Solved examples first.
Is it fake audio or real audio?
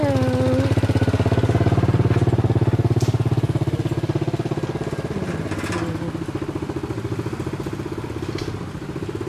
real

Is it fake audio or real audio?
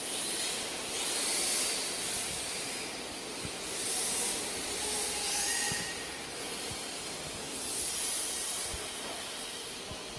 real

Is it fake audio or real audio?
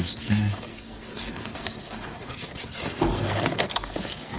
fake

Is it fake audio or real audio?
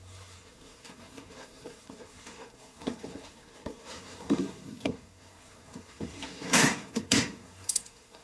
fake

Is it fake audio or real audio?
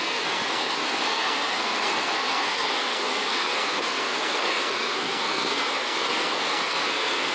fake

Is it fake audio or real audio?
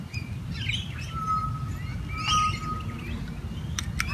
real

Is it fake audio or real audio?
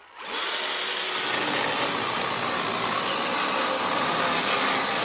real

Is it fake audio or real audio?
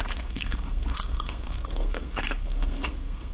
fake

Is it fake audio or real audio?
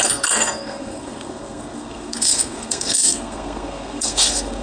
fake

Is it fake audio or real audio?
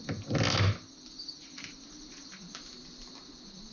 real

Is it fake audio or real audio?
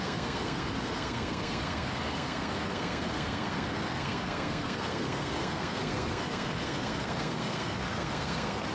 fake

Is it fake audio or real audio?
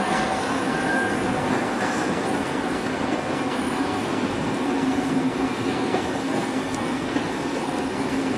fake